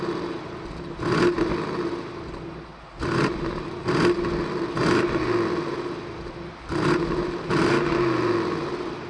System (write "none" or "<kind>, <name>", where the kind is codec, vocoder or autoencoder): none